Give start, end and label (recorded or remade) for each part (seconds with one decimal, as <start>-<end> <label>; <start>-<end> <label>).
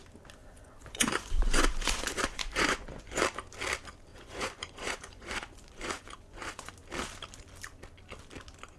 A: 0.0-0.4 recorded; 0.4-3.2 remade; 3.2-4.1 recorded; 4.1-6.7 remade; 6.7-8.8 recorded